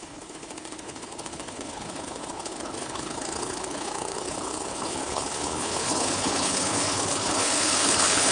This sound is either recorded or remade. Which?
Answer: remade